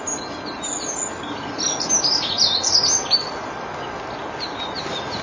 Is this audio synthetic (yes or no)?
no